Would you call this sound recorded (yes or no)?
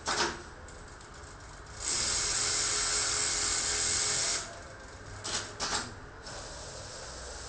yes